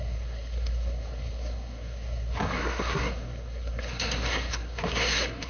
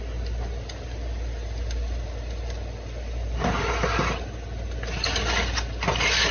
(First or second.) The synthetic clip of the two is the first